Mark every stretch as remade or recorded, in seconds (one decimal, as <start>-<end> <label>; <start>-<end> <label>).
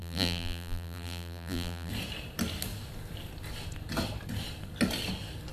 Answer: 0.0-1.9 remade; 1.9-5.5 recorded